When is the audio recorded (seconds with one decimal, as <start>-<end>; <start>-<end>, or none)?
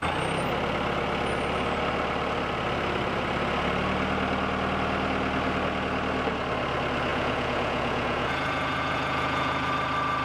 0.0-7.1; 9.7-10.2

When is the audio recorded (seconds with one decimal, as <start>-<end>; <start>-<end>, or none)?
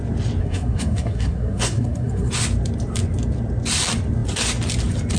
0.0-0.4; 2.3-5.2